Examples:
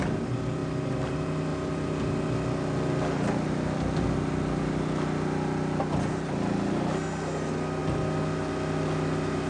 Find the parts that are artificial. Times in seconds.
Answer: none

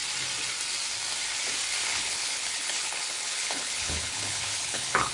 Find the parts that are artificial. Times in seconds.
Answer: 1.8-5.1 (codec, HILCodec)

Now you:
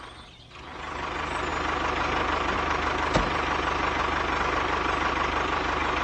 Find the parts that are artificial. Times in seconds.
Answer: none